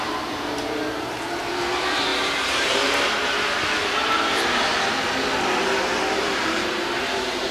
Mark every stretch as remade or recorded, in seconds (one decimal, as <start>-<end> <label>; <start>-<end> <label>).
0.0-4.7 remade; 4.7-6.2 recorded; 6.2-7.5 remade